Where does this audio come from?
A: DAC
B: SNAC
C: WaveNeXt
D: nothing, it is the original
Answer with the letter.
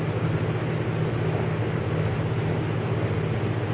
D